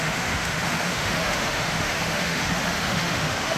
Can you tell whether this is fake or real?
fake